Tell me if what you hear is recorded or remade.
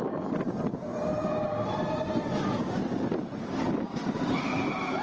recorded